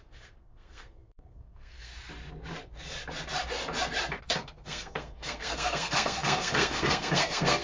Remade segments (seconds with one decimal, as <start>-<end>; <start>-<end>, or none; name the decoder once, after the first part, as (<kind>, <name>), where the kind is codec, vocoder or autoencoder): 0.0-1.9 (codec, SNAC); 4.2-7.6